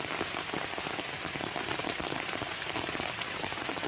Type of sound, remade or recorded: recorded